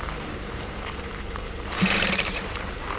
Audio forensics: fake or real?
fake